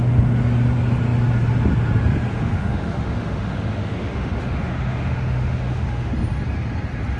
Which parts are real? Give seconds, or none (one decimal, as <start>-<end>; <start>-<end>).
0.0-2.3; 6.1-7.2